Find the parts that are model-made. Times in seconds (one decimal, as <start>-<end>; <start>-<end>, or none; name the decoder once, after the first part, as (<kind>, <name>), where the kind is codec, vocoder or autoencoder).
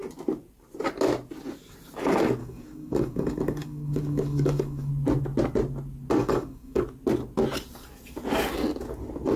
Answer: 2.4-4.9 (codec, DAC); 6.2-6.8